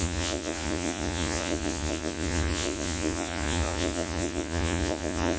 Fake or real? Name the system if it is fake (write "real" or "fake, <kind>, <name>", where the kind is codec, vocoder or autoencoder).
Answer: fake, vocoder, Vocos